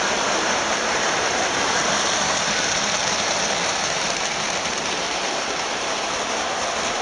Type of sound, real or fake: fake